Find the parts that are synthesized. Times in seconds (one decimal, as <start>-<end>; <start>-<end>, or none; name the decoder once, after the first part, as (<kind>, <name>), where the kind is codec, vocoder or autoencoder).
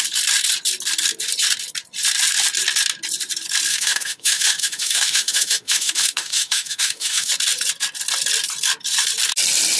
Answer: 3.7-7.3 (autoencoder, DAC-VAE)